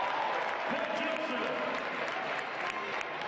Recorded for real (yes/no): yes